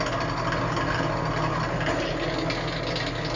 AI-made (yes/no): no